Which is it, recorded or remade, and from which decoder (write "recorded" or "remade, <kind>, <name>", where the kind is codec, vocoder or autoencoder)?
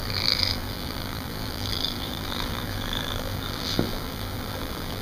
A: remade, vocoder, BigVGAN v2